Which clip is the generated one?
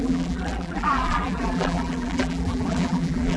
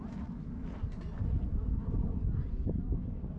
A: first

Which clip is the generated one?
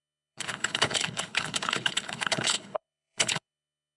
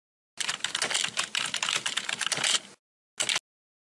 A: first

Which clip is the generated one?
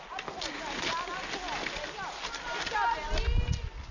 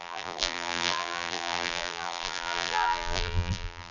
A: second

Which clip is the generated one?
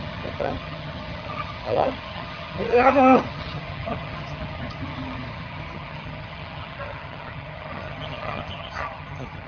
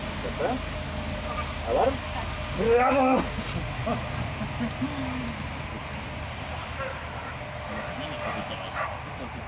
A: first